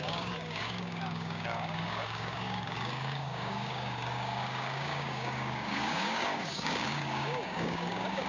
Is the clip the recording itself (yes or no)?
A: no